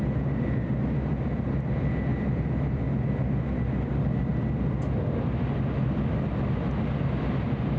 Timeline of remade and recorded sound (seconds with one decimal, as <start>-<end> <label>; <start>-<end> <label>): 0.0-7.8 recorded